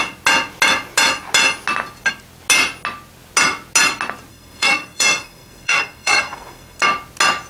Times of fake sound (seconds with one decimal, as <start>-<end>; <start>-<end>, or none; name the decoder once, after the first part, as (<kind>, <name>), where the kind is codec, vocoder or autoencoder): 4.3-6.8 (codec, SNAC)